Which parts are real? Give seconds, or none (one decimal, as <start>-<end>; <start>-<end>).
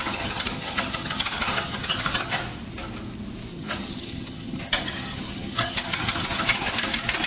2.4-3.5; 6.7-7.3